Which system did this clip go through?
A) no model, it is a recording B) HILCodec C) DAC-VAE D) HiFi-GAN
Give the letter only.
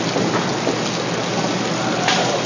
A